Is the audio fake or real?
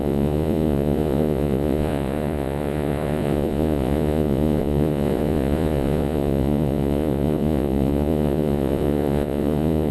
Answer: fake